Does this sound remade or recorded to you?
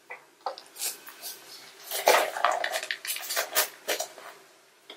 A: recorded